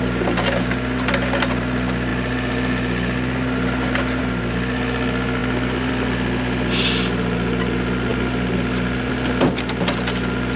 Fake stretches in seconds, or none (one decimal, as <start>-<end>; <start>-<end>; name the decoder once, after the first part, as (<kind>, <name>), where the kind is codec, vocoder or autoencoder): none

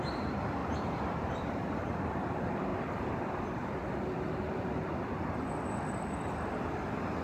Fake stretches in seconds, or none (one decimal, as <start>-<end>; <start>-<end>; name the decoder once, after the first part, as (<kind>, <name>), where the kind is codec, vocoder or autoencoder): 0.6-1.7 (vocoder, BigVGAN v2)